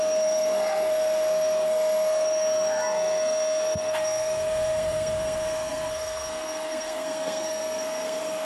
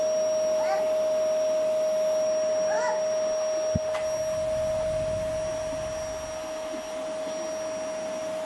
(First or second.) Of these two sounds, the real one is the second